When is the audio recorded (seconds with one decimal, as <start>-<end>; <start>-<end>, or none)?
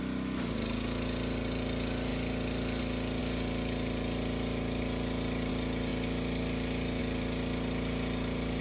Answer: 0.0-8.6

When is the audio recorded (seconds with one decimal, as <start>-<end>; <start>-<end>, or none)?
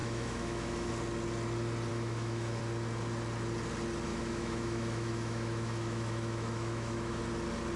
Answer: 0.9-1.9; 2.6-4.1; 7.2-7.8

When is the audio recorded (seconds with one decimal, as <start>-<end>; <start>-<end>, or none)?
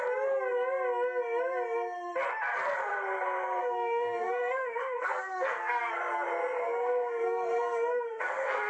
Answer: 0.0-3.6; 5.9-6.4